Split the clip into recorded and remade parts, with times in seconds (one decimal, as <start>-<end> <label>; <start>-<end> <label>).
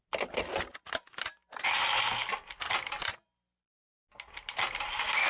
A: 0.0-5.3 recorded